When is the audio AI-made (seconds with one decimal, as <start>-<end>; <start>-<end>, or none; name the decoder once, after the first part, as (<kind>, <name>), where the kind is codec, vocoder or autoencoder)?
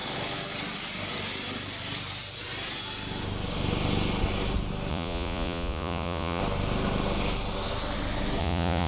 4.9-6.4 (vocoder, Vocos); 8.4-8.9